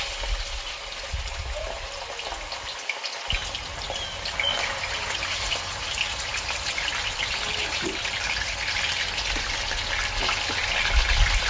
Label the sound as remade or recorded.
recorded